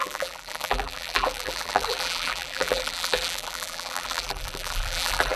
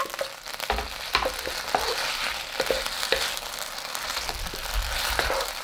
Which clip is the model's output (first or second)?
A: first